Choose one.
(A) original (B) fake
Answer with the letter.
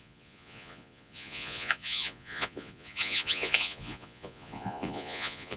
B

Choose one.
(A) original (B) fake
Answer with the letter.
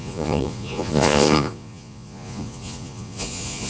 B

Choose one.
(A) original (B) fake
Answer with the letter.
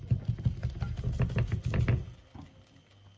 A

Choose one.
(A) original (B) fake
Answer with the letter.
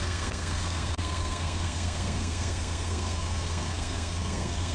B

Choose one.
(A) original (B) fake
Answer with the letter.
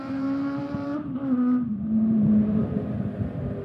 B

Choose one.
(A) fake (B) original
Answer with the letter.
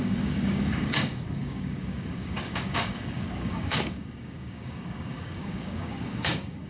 A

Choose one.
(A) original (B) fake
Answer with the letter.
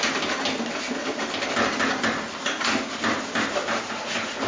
A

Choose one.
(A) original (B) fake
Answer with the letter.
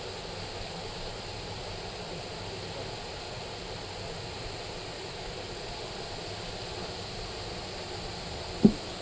A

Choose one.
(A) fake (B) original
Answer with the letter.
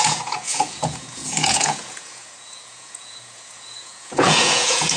A